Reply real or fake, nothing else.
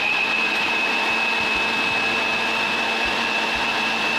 real